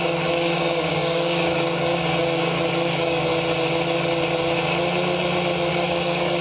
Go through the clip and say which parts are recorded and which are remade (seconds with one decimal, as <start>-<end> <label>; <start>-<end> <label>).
0.0-3.3 remade; 3.3-5.7 recorded; 5.7-6.4 remade